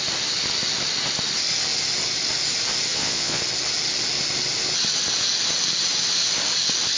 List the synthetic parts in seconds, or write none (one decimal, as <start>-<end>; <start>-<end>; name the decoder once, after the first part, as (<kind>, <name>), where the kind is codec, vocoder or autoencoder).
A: 2.9-3.4 (vocoder, Vocos)